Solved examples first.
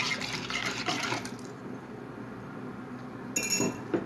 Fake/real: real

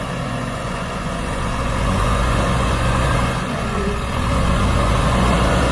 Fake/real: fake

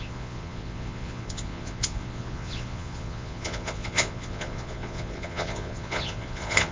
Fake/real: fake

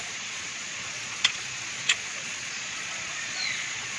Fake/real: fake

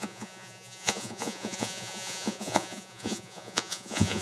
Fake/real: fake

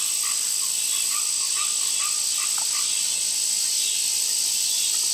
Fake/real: real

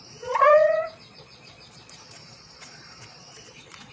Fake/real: fake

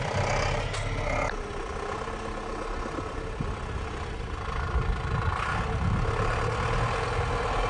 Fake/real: real